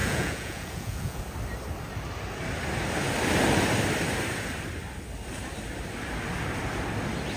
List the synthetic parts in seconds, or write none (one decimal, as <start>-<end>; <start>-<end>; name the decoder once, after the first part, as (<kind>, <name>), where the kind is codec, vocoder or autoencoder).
0.0-1.2 (vocoder, Vocos)